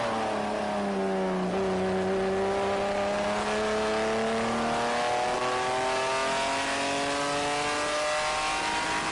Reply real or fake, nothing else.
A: real